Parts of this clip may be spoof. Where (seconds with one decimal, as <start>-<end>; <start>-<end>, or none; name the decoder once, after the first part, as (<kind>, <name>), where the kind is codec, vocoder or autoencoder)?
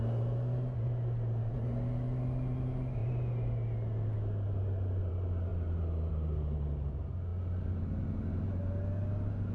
none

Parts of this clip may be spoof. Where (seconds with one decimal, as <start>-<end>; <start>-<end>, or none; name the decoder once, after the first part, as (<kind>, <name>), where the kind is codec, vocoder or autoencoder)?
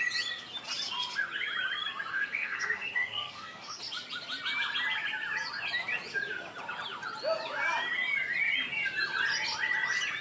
2.1-3.8 (codec, SNAC)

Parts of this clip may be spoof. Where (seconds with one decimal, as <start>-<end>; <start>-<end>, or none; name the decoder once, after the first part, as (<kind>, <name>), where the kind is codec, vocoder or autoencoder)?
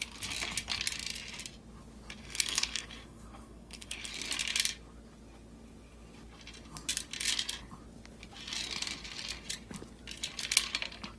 2.2-4.1 (codec, SNAC)